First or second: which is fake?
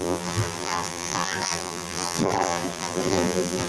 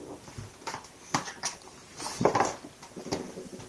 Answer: first